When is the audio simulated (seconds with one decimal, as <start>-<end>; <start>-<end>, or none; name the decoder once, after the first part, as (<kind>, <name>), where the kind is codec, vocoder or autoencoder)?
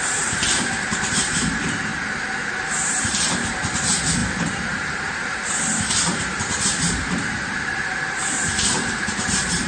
0.0-1.9 (vocoder, BigVGAN v2); 2.6-9.7